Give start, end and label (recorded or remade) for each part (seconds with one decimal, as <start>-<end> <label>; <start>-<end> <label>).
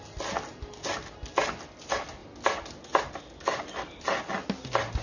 0.0-5.0 recorded